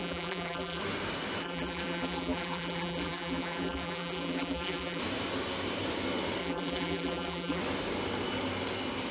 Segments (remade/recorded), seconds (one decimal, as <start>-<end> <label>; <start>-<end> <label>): 0.0-0.8 remade; 0.8-1.4 recorded; 1.4-5.0 remade; 5.0-6.4 recorded; 6.4-7.6 remade; 7.6-9.1 recorded